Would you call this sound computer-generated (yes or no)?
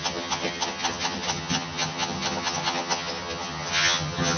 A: yes